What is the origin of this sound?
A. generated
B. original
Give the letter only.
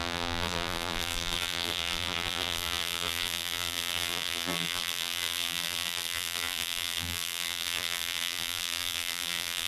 A